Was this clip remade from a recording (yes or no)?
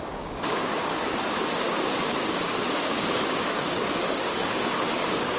yes